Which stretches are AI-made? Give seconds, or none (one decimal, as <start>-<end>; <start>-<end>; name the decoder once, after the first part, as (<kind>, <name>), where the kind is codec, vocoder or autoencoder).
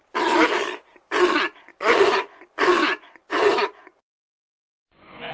1.7-5.3 (vocoder, Vocos)